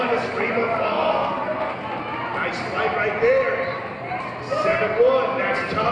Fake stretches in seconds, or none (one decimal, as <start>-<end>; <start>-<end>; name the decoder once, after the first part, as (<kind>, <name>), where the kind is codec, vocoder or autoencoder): 0.9-1.8 (codec, SNAC)